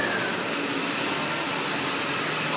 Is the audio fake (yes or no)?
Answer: no